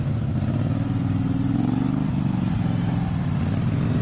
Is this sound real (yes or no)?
yes